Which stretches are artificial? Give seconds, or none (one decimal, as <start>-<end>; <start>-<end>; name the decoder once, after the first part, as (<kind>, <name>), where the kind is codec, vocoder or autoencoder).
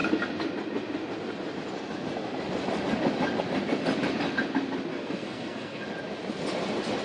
4.9-5.8 (codec, SNAC)